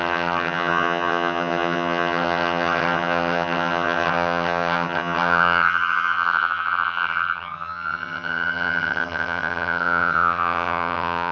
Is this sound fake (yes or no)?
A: yes